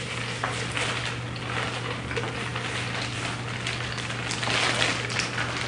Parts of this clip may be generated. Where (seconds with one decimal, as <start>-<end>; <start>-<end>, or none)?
none